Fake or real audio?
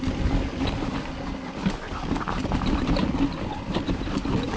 real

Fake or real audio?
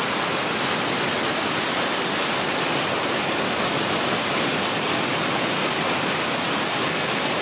real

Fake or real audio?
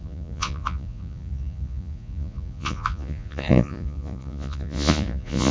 fake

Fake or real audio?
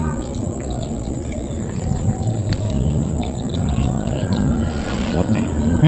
fake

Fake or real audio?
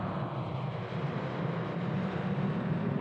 real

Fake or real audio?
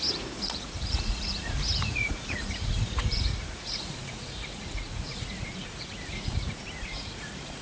fake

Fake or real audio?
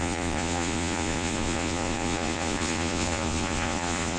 fake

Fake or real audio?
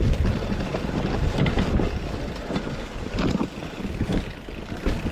real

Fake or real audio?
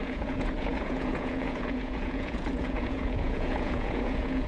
fake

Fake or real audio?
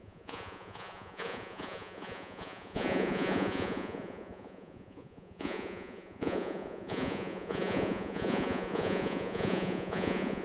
fake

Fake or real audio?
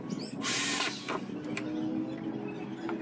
real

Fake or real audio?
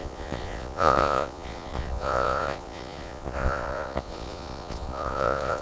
fake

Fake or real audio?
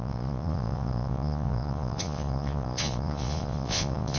fake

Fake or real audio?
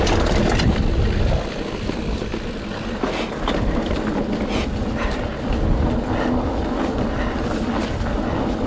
real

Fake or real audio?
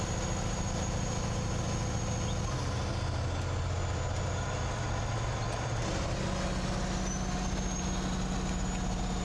real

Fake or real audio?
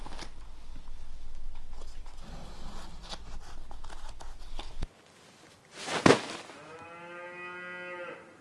real